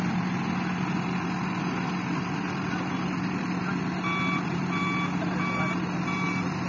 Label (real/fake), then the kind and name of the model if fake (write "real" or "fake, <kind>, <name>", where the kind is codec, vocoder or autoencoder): real